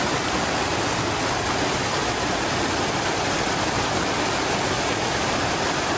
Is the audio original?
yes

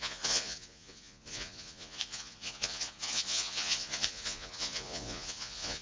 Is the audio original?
no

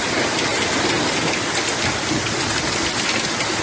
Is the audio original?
yes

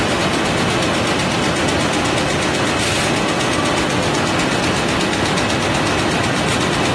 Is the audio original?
yes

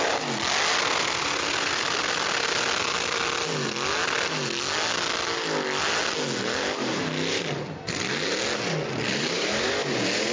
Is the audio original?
yes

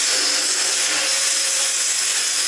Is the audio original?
no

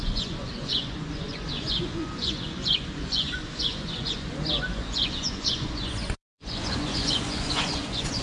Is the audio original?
no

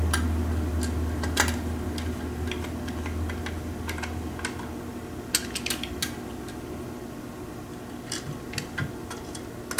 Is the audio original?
yes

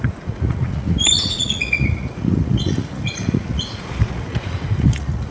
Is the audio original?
no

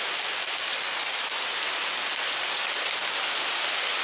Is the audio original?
yes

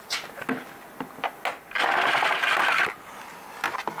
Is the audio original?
yes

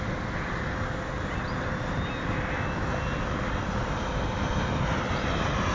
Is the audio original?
yes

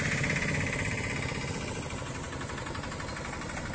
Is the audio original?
yes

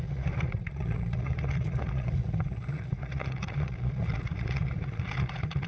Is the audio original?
no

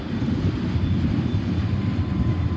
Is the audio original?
yes